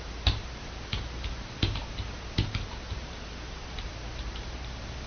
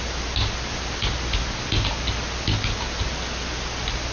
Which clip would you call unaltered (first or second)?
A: second